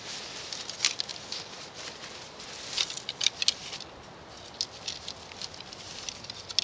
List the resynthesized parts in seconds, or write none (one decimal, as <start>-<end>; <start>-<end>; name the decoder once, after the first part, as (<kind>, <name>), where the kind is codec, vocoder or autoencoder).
none